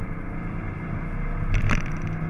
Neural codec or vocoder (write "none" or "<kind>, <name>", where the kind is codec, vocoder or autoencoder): none